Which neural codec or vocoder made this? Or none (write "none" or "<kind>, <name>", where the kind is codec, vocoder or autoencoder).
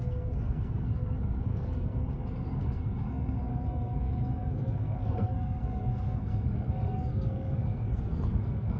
codec, SNAC